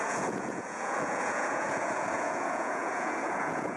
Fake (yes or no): yes